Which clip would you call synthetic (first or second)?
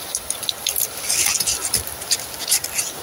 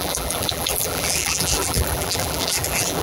second